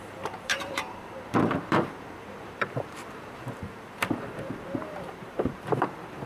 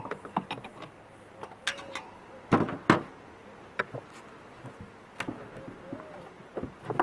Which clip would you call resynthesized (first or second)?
first